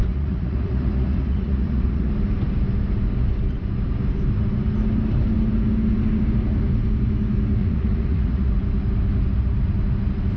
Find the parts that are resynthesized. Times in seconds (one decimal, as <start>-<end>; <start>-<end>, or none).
0.0-2.1; 7.6-8.5